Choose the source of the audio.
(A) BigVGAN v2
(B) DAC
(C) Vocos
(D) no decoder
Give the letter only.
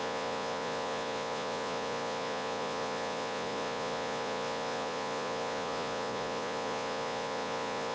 C